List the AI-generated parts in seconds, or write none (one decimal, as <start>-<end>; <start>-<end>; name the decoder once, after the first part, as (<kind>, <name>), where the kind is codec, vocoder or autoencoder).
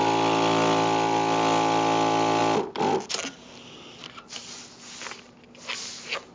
none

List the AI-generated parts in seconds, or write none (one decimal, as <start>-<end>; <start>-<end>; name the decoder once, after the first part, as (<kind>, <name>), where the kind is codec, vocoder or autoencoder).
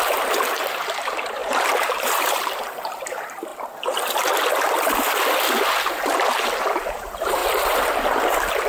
0.0-3.5 (vocoder, BigVGAN v2); 5.9-8.7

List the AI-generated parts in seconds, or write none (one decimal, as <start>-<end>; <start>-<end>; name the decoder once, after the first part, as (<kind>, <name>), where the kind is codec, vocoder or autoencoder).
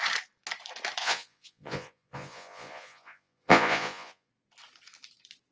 1.0-4.3 (vocoder, Vocos)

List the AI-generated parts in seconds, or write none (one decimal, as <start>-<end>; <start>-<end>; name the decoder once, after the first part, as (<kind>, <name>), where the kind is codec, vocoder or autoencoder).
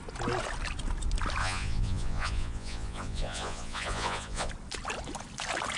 1.4-4.5 (vocoder, Vocos)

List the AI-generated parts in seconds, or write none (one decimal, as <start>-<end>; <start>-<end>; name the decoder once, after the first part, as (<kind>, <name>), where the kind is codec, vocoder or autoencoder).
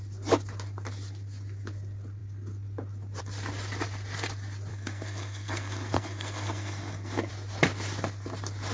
4.7-7.3 (codec, SNAC)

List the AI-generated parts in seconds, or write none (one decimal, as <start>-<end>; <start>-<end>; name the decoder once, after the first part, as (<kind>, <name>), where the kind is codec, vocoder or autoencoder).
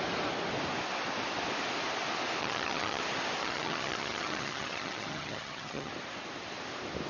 2.4-3.0 (vocoder, HiFi-GAN); 3.4-5.9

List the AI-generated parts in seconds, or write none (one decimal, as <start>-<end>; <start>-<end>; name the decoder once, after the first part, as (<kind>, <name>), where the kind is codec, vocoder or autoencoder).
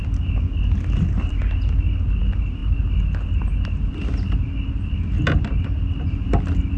none